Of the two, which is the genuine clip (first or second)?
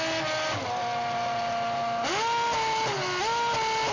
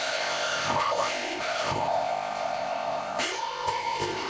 first